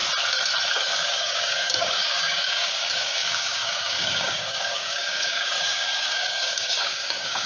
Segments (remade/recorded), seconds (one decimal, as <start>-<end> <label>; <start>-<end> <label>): 0.0-0.7 recorded; 0.7-7.5 remade